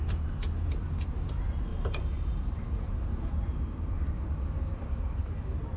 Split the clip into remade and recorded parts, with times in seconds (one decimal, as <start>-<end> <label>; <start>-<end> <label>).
0.0-1.7 recorded; 1.7-5.2 remade; 5.2-5.8 recorded